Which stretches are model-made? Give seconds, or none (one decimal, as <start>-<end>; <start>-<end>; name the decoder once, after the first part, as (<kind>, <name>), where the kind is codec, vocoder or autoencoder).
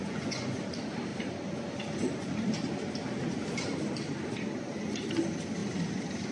0.0-0.6 (vocoder, Vocos)